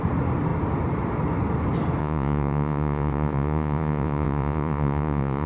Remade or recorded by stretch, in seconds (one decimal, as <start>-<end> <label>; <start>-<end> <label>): 0.0-2.0 recorded; 2.0-5.5 remade